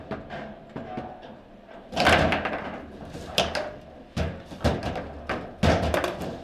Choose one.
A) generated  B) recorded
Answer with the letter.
B